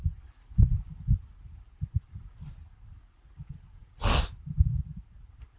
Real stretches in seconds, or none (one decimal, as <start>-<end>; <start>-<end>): 0.0-5.6